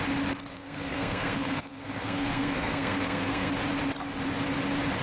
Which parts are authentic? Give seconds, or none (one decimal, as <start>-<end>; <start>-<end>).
0.0-0.5; 3.5-5.0